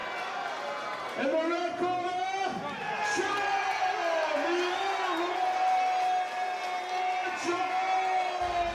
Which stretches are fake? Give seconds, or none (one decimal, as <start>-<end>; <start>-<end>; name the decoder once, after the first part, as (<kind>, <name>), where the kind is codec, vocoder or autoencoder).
none